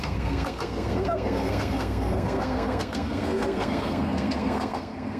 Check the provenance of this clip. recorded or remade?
remade